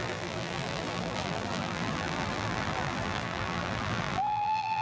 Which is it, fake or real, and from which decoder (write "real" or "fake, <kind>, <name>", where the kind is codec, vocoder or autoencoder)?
fake, vocoder, BigVGAN v2